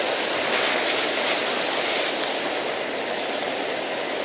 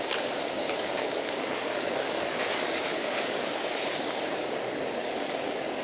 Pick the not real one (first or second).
second